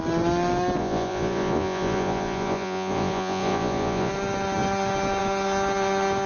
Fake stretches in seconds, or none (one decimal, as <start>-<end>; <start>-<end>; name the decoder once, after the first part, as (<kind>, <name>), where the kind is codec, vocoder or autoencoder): 0.8-4.1 (vocoder, Vocos)